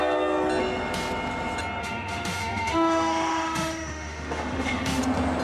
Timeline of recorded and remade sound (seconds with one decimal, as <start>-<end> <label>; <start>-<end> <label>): 0.0-1.8 recorded; 1.8-5.0 remade; 5.0-5.4 recorded